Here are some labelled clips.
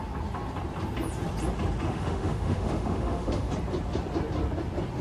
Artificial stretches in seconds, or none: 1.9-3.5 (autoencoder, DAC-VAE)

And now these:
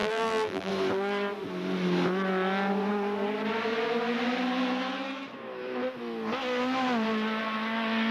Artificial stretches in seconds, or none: 0.0-0.7 (vocoder, BigVGAN v2)

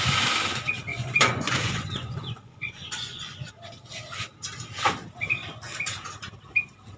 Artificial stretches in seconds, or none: 0.9-3.5 (vocoder, Vocos)

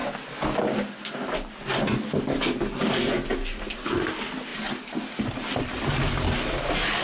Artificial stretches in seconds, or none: none